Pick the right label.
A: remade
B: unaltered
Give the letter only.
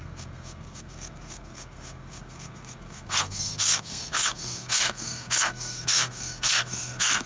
A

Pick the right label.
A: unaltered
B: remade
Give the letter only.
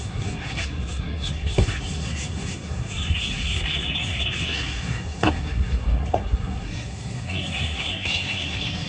B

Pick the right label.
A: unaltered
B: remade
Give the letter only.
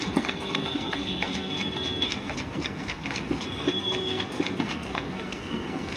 B